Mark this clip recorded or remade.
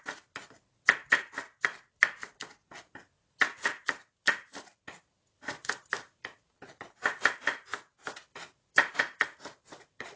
recorded